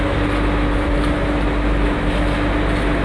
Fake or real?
real